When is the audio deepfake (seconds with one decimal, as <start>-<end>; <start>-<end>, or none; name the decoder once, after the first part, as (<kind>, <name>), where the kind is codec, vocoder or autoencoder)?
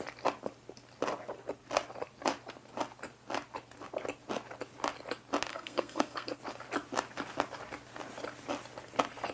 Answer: 5.5-6.4 (codec, SNAC)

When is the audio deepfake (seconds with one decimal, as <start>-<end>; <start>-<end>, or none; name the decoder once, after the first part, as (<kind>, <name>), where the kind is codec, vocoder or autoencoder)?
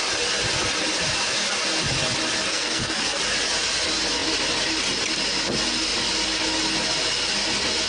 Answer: 2.5-3.2 (codec, SNAC)